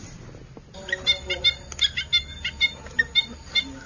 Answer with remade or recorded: recorded